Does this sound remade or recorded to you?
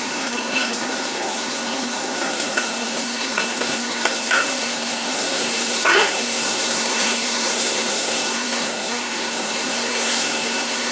remade